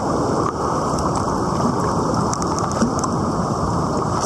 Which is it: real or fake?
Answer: real